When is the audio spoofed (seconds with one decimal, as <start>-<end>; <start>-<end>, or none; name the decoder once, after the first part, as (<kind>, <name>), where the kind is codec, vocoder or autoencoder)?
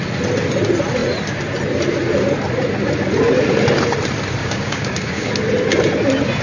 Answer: 4.4-5.3 (codec, DAC)